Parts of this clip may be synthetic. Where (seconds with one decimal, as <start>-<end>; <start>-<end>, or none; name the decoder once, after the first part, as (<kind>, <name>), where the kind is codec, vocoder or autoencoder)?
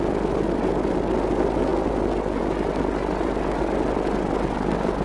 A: none